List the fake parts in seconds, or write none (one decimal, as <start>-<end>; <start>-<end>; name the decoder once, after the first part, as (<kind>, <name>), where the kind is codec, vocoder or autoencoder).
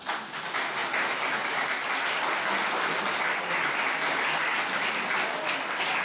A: none